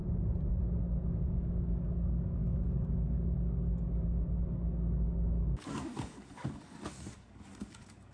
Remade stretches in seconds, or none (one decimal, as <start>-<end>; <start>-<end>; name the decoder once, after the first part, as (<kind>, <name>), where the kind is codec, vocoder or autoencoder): 1.1-8.1 (codec, DAC)